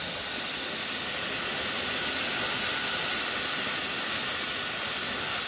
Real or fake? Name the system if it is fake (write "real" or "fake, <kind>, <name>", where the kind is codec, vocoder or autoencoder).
real